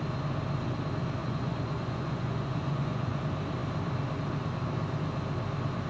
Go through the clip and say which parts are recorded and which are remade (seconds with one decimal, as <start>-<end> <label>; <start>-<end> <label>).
0.0-1.2 recorded; 1.2-3.2 remade; 3.2-5.9 recorded